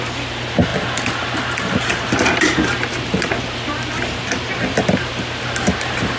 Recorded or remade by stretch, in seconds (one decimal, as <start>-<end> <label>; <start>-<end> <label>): 0.0-6.2 recorded